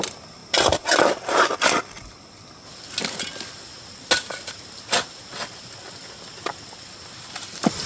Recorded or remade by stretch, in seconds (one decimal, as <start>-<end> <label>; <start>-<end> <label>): 0.0-7.9 recorded